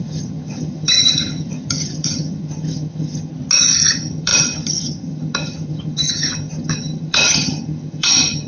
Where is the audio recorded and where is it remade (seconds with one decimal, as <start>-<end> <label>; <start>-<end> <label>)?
0.0-3.3 remade; 3.3-3.9 recorded; 3.9-8.5 remade